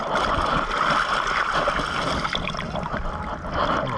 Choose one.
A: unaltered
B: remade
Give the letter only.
A